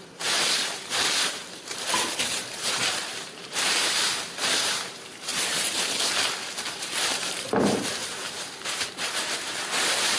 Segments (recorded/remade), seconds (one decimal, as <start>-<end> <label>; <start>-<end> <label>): 0.0-10.2 remade